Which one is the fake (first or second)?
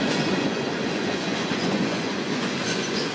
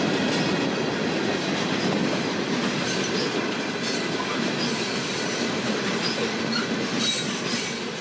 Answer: first